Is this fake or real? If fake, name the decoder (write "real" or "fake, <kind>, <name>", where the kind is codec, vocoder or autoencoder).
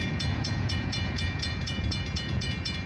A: fake, vocoder, Vocos